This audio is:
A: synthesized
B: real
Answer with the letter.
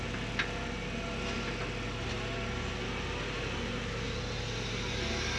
B